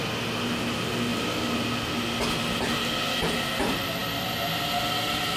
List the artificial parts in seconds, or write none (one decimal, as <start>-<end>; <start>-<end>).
none